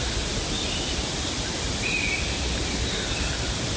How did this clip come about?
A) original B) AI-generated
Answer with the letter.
A